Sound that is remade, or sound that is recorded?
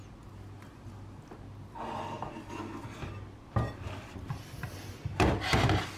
recorded